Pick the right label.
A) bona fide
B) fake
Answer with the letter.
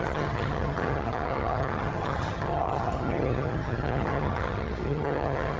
B